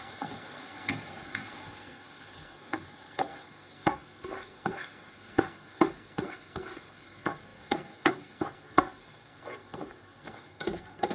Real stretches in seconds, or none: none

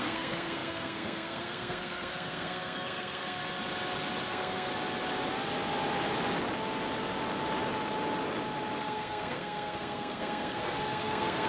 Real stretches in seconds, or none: 3.4-4.3; 4.7-8.8

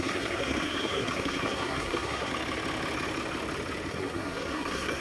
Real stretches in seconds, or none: 2.3-3.9